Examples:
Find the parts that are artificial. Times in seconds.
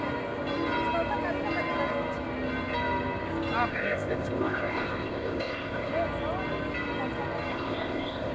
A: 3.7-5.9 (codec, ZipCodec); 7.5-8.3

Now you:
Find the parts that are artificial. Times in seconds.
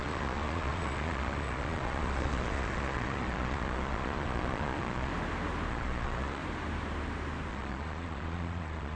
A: 0.0-5.1 (vocoder, Vocos); 5.7-6.4; 7.5-9.0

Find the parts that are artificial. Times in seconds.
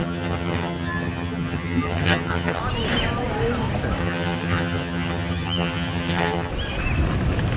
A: 0.0-2.6 (vocoder, HiFi-GAN); 4.0-6.5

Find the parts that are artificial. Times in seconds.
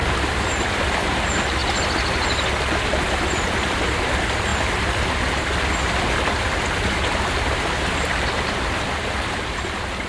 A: 0.6-1.6 (vocoder, BigVGAN v2); 2.9-10.1